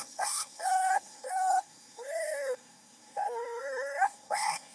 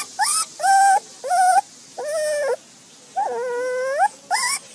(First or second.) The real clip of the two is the second